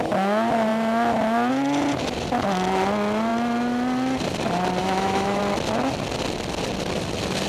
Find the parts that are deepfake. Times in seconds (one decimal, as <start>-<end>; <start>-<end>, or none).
4.8-5.4